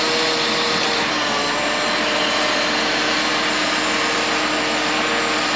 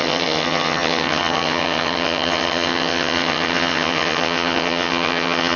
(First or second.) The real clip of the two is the first